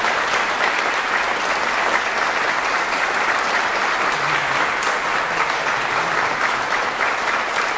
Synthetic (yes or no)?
no